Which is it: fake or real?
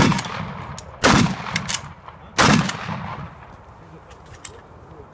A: real